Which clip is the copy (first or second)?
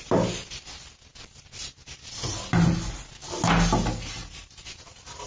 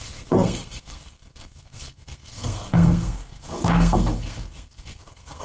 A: second